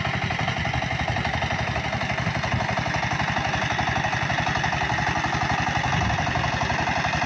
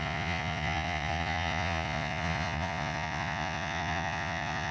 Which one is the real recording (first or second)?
first